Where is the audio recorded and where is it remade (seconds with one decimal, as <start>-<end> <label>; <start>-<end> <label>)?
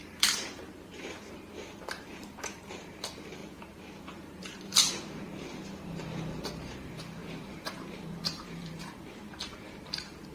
0.0-10.3 remade